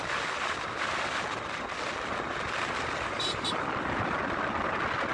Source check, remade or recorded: recorded